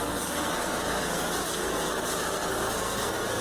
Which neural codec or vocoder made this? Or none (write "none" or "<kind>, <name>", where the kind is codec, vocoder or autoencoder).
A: codec, SNAC